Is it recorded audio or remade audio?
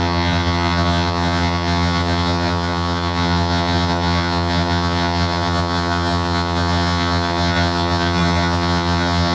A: remade